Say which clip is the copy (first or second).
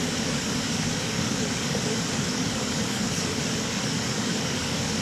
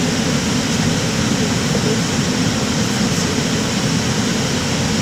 first